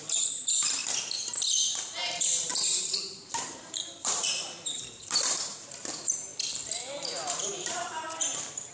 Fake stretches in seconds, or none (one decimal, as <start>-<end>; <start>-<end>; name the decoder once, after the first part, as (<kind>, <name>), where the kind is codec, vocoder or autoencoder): 0.0-0.8 (vocoder, BigVGAN v2); 1.8-6.3; 6.9-8.7